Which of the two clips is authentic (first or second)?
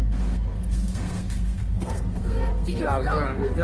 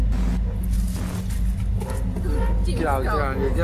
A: second